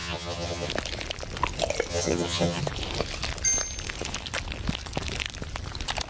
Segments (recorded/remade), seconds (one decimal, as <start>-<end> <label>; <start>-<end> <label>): 0.0-0.7 remade; 0.7-1.9 recorded; 1.9-2.6 remade; 2.6-6.1 recorded